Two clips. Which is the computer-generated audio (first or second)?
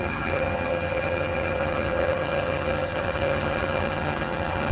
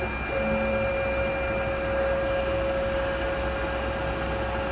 first